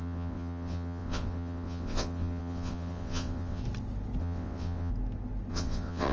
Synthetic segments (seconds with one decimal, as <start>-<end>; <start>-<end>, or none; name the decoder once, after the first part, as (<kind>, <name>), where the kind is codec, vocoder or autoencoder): 0.0-3.6 (vocoder, WaveNeXt); 4.2-4.9; 5.5-6.1